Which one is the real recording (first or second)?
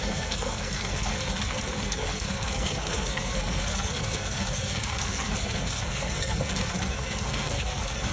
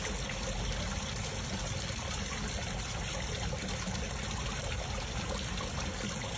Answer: second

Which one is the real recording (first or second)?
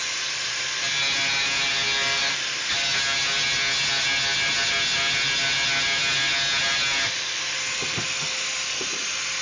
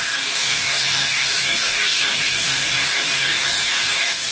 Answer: first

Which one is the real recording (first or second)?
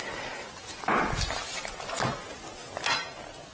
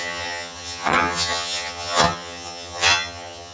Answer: first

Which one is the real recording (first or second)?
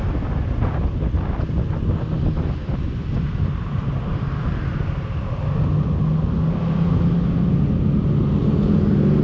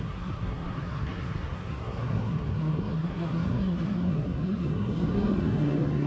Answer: first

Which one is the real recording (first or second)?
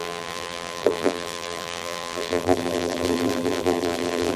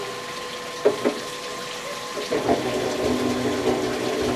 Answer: second